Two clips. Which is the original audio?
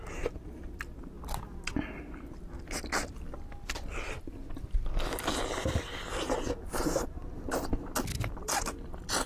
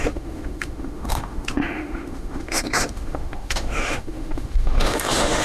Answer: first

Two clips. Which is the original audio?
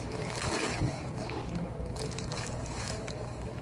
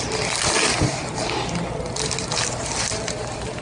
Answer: second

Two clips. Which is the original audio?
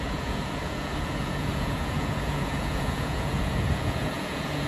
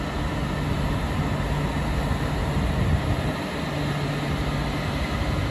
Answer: second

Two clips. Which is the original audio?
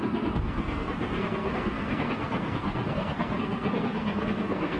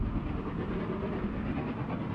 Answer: second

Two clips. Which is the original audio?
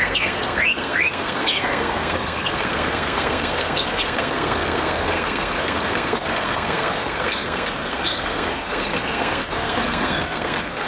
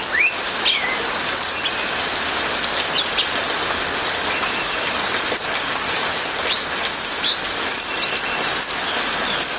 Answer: second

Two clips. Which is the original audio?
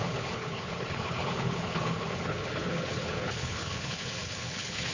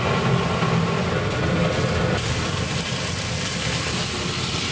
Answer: second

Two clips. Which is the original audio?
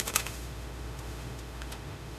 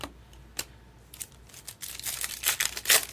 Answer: second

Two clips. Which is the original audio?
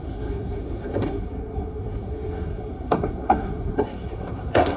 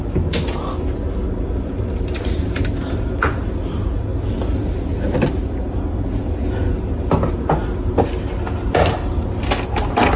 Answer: second